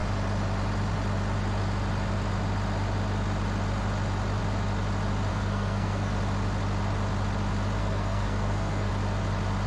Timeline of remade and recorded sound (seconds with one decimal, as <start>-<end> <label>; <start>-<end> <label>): 0.0-5.3 recorded; 5.3-6.1 remade; 6.1-7.8 recorded; 7.8-8.9 remade; 8.9-9.7 recorded